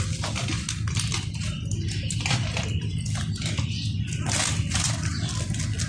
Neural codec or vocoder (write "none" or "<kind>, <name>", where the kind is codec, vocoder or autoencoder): none